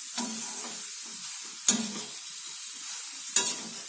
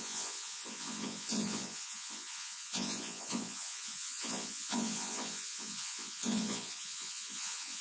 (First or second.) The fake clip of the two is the second